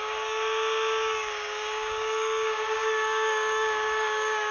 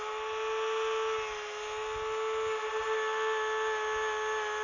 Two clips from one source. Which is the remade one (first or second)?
first